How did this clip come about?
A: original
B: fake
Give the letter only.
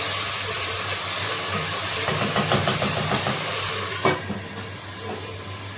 A